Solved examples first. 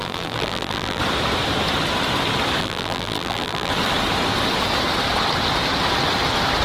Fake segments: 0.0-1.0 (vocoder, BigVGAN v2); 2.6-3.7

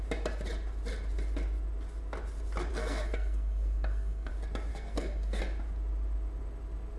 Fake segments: 2.7-4.3 (codec, SNAC); 4.7-5.4